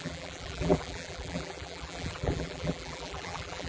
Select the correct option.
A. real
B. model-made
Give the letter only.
B